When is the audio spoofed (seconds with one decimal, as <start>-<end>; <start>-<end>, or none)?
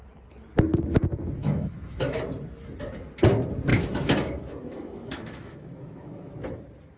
1.4-2.2; 3.7-6.3